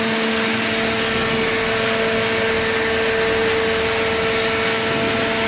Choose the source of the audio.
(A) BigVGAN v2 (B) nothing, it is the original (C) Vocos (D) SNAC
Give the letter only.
B